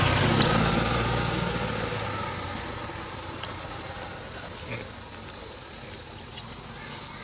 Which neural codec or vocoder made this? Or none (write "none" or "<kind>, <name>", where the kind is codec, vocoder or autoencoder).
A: none